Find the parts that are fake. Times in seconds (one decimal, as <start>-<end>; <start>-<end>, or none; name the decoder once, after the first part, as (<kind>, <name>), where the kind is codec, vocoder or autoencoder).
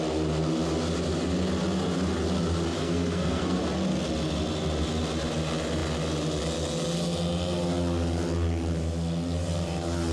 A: 2.8-3.6 (codec, SNAC)